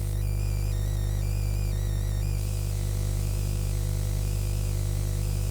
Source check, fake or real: fake